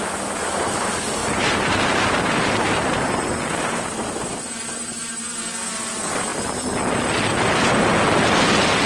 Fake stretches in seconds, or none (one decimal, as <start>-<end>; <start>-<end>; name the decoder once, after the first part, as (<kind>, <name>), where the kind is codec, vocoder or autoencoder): 1.2-4.4 (vocoder, BigVGAN v2)